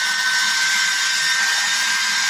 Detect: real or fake real